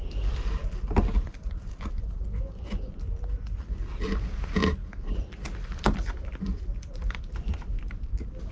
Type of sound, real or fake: real